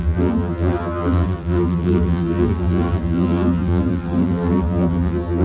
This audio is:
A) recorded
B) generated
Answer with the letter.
B